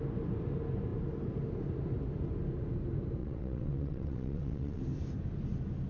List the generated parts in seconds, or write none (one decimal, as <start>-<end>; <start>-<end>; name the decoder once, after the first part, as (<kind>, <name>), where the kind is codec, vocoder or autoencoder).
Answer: 3.2-4.8 (vocoder, WaveNeXt)